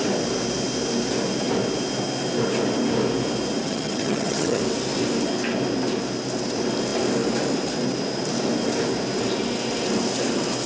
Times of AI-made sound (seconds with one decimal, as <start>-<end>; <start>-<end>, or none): 3.6-4.6